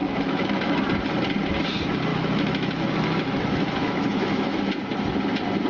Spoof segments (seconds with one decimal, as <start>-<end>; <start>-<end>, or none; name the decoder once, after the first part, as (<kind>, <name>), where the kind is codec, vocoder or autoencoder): 0.0-0.8 (autoencoder, DAC-VAE); 2.1-4.6